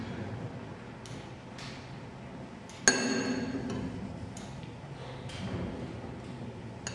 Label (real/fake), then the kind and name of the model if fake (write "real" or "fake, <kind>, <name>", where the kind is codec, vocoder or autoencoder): real